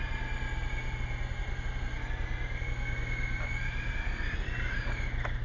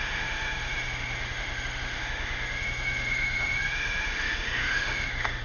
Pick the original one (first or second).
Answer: first